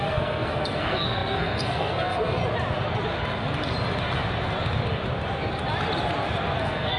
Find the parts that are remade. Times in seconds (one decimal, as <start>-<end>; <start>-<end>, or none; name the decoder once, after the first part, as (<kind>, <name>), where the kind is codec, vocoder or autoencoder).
0.0-2.4 (codec, SNAC); 6.6-7.0